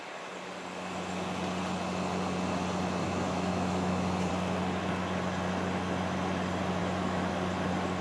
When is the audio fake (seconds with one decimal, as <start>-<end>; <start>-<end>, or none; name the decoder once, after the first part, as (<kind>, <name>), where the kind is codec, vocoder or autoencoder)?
3.0-4.3 (autoencoder, DAC-VAE); 6.8-7.3